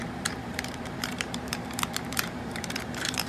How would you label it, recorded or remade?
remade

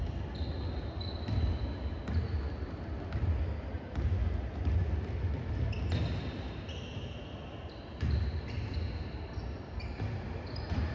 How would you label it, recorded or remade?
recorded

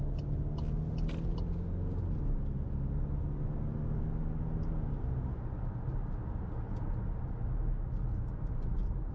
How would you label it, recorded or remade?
recorded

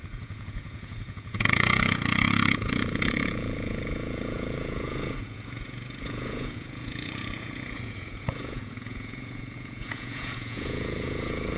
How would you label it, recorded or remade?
remade